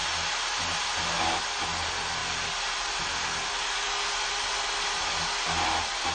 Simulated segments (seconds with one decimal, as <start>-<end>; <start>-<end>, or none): none